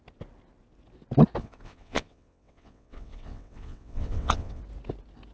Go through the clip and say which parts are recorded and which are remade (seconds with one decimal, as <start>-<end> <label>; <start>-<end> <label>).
0.0-1.4 recorded; 1.4-4.6 remade; 4.6-5.3 recorded